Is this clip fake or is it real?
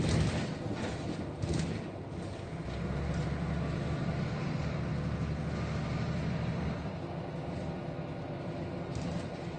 real